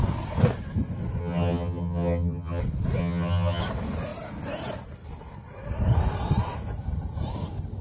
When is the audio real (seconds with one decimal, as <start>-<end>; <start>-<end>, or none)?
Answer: 0.0-1.2; 2.6-3.0; 3.6-7.8